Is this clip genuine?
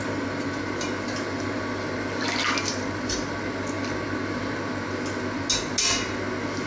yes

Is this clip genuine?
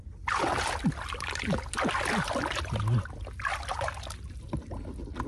yes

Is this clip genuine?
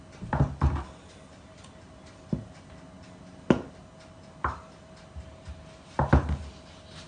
yes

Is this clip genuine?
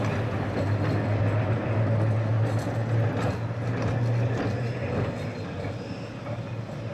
yes